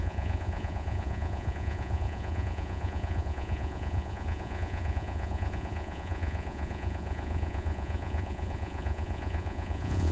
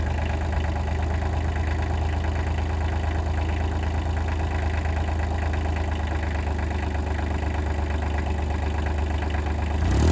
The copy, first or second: first